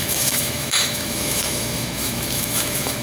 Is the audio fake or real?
fake